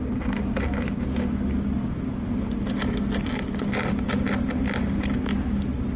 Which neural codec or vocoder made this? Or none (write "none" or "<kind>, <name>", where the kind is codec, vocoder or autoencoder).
none